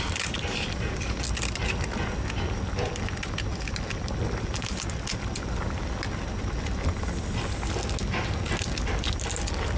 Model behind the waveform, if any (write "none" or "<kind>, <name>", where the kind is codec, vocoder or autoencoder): none